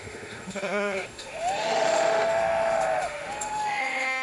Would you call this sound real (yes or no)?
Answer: no